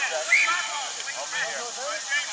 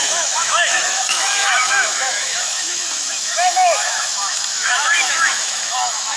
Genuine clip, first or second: first